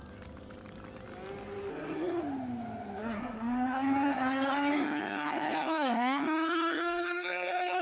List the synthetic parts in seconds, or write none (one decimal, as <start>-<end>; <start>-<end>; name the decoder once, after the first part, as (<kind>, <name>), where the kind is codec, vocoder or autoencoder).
1.7-2.2 (codec, SNAC); 3.0-7.8